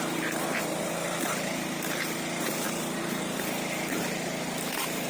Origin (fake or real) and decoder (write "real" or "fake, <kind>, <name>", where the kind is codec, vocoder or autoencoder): fake, vocoder, BigVGAN v2